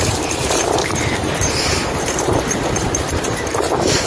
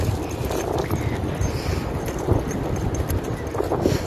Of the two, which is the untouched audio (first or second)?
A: second